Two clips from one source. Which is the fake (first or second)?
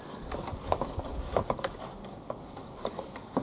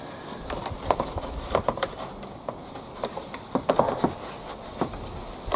first